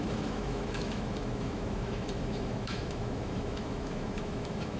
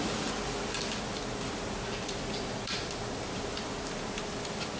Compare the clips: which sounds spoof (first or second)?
first